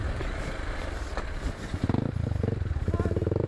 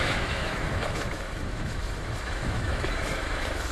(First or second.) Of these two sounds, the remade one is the second